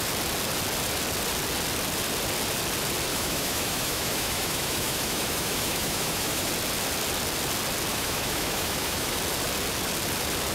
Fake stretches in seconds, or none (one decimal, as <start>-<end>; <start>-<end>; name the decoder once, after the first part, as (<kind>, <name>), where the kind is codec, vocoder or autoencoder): 3.1-6.5 (autoencoder, DAC-VAE); 7.9-9.2